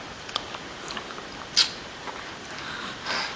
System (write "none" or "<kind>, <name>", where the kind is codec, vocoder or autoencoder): none